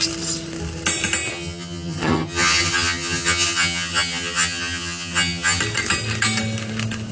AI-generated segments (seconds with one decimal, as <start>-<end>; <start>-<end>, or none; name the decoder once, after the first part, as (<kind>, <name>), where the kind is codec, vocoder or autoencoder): 1.3-5.6 (vocoder, HiFi-GAN)